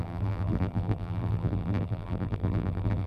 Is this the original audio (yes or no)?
no